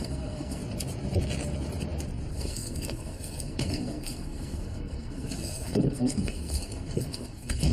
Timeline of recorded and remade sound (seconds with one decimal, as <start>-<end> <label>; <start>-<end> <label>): 0.0-0.6 remade; 0.6-2.3 recorded; 2.3-7.7 remade